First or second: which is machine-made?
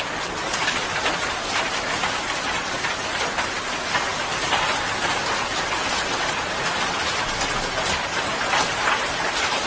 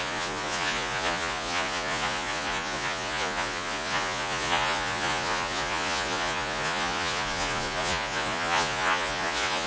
second